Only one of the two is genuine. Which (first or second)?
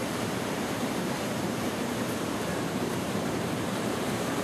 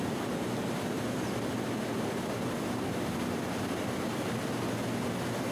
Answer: second